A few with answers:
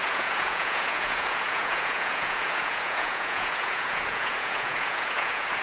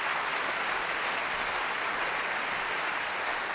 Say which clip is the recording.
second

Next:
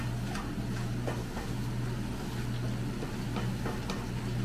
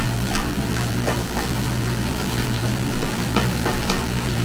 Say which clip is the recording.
first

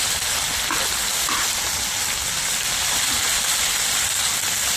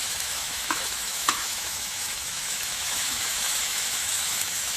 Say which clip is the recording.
first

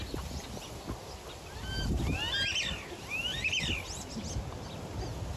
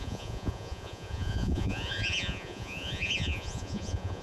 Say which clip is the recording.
first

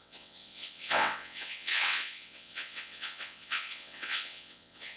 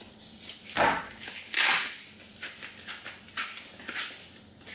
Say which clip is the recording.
second